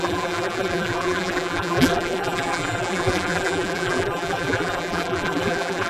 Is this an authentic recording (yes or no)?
no